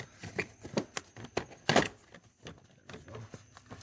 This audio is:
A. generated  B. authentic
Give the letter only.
B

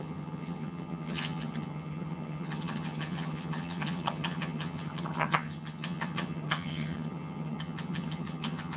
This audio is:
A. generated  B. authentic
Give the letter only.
A